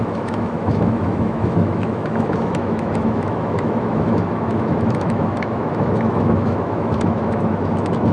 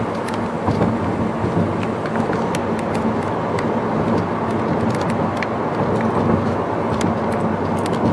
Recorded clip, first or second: second